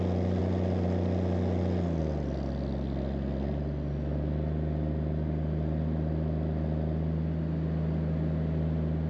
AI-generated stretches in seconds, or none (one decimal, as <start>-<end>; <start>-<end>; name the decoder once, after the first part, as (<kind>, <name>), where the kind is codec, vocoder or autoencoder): none